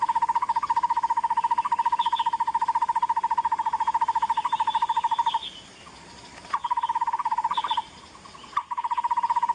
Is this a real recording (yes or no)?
yes